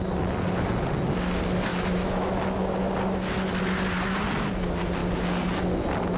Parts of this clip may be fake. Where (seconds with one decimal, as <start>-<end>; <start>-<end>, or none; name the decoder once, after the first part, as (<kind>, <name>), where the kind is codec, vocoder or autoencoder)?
1.7-2.4 (autoencoder, DAC-VAE)